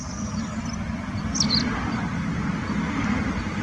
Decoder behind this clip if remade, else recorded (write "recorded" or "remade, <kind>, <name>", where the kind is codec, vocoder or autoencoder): recorded